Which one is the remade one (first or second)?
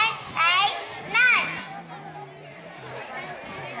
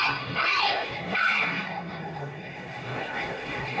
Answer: second